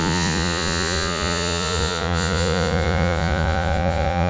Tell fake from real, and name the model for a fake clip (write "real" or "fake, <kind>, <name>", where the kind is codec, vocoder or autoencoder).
fake, vocoder, Vocos